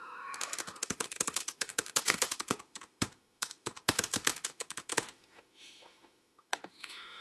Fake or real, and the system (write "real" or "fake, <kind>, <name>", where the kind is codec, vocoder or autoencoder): fake, autoencoder, DAC-VAE